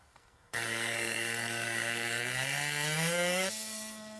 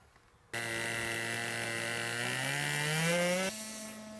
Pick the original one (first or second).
second